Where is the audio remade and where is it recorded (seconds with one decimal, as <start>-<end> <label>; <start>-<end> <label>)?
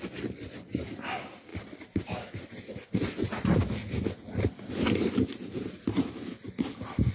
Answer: 0.0-7.1 recorded